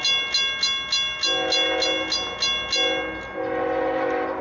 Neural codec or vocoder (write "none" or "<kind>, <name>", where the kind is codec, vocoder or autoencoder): none